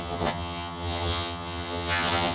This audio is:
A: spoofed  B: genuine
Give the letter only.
A